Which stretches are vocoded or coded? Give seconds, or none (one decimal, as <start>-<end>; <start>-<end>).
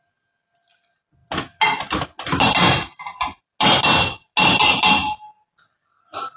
none